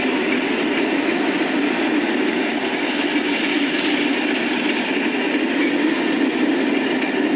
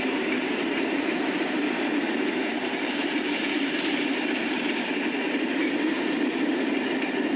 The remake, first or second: second